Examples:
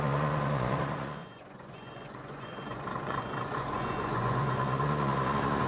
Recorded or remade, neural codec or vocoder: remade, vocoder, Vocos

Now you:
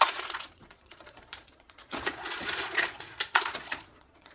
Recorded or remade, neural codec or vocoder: remade, vocoder, Vocos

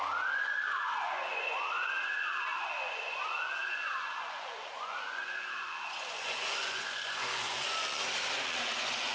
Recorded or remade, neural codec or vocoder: remade, vocoder, Vocos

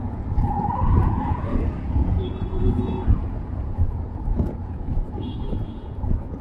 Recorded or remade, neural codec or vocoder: remade, vocoder, Vocos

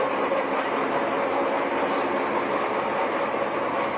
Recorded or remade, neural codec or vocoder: recorded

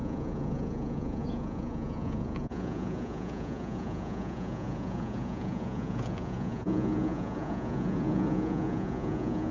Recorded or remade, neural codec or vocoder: remade, vocoder, Vocos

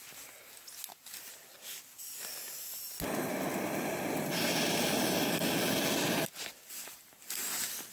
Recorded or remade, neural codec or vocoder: recorded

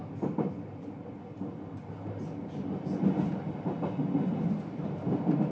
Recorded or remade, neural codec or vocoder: recorded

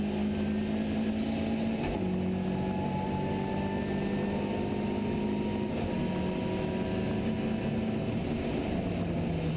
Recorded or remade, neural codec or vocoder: recorded